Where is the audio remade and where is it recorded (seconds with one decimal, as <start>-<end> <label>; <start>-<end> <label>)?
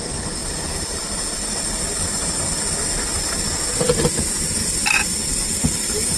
0.0-6.2 recorded